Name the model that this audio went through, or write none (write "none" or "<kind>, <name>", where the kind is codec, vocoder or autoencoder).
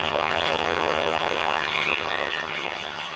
vocoder, HiFi-GAN